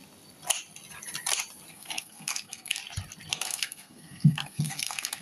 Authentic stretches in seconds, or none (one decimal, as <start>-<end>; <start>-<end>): 0.0-1.7; 2.8-3.3